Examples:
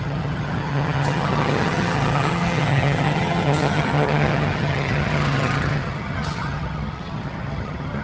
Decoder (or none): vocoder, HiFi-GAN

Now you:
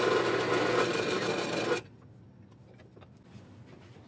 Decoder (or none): none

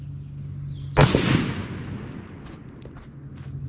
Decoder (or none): none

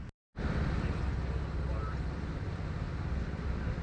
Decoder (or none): none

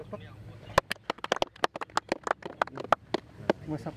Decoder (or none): none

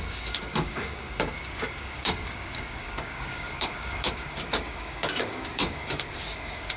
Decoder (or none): codec, DAC